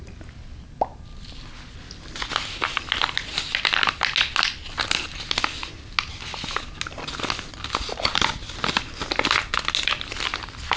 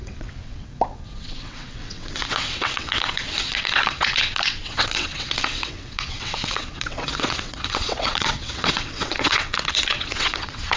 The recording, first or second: first